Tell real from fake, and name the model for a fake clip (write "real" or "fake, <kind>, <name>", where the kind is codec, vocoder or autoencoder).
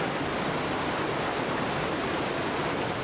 real